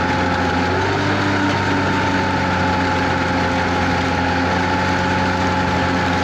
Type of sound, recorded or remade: recorded